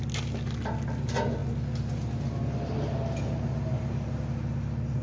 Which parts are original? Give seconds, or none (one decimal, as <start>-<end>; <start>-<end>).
0.0-5.0